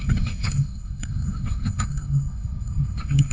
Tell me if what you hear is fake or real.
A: fake